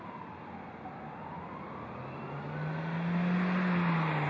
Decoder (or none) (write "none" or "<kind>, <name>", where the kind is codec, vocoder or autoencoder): none